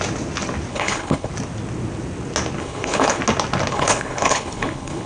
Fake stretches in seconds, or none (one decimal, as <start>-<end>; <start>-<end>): 0.7-1.3; 2.6-3.2; 3.7-5.1